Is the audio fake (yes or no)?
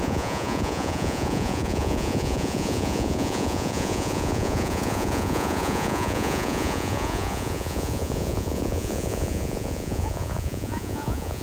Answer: yes